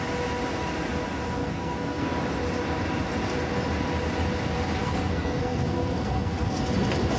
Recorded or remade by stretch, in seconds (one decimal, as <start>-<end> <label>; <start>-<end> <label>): 0.0-1.4 recorded; 1.4-2.1 remade; 2.1-4.8 recorded; 4.8-6.6 remade; 6.6-7.2 recorded